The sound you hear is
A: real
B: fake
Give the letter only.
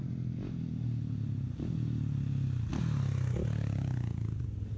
A